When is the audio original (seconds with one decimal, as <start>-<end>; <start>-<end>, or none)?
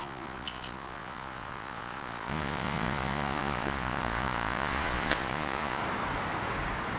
5.8-7.0